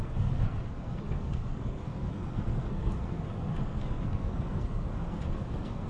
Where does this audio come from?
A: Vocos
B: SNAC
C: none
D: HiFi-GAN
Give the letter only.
B